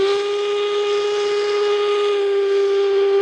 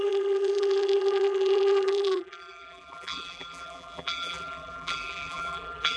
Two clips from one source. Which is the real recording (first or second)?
first